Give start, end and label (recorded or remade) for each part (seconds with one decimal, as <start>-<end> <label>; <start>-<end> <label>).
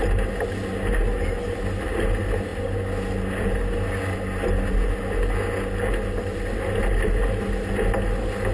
0.0-8.5 recorded